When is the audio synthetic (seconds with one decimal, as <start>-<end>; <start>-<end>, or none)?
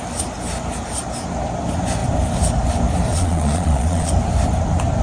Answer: 3.1-4.1